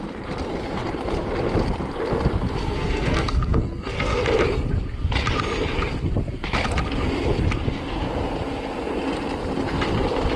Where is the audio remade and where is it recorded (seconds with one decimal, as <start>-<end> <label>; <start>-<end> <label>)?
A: 0.0-2.6 recorded; 2.6-4.2 remade; 4.2-10.4 recorded